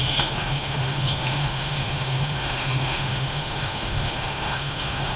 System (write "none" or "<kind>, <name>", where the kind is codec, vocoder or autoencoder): autoencoder, DAC-VAE